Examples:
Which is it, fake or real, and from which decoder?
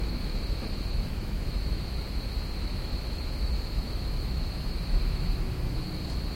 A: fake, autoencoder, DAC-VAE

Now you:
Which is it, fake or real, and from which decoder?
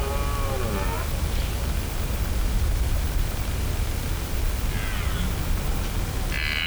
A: real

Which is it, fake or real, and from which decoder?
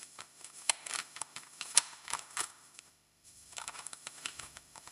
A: fake, autoencoder, DAC-VAE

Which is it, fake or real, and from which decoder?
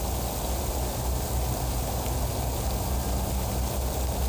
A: real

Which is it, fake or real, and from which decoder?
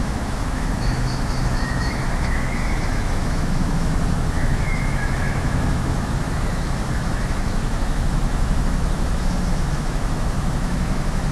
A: fake, autoencoder, DAC-VAE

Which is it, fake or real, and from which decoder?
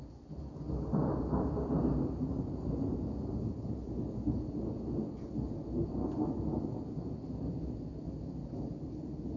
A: real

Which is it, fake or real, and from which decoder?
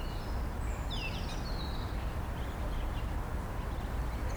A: real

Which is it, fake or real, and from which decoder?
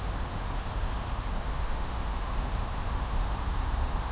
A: fake, autoencoder, DAC-VAE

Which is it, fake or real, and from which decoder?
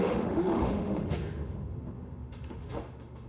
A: fake, autoencoder, DAC-VAE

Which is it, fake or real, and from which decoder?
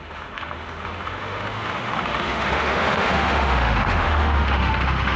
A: fake, autoencoder, DAC-VAE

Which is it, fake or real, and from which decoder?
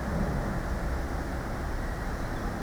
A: real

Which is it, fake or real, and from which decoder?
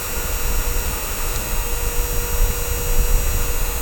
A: real